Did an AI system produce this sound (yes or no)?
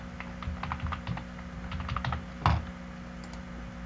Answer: no